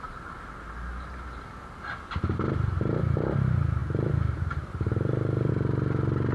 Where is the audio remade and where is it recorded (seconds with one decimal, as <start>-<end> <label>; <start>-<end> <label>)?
0.0-6.3 recorded